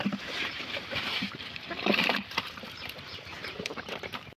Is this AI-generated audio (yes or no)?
yes